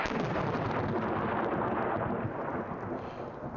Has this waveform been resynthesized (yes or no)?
no